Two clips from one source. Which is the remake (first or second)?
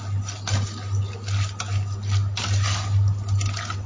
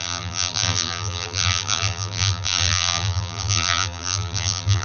second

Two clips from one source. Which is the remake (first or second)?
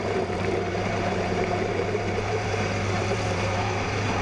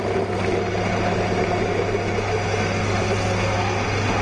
first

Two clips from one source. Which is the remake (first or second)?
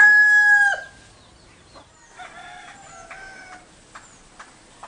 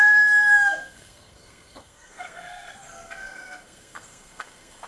second